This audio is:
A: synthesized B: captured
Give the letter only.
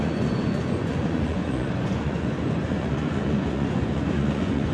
A